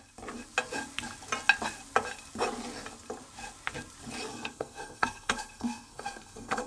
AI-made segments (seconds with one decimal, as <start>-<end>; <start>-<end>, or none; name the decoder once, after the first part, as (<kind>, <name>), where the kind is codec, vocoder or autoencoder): 4.3-6.7 (codec, SNAC)